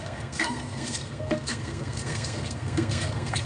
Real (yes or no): no